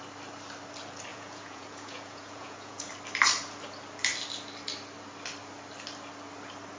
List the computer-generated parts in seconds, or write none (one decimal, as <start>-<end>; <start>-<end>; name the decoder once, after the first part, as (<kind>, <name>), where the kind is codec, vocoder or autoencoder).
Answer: 1.1-2.9 (vocoder, Vocos)